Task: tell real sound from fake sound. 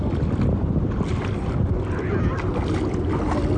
real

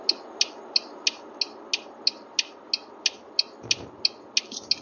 real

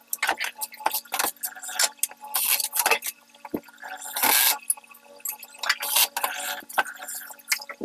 real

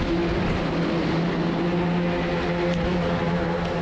real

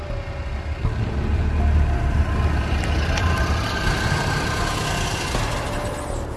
real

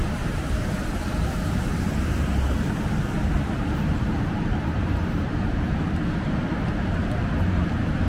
fake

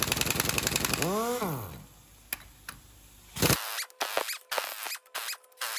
real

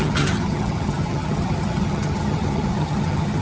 fake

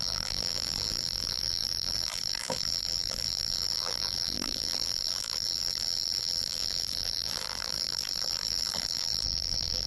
fake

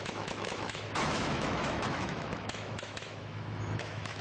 fake